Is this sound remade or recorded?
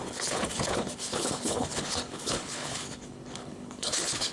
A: remade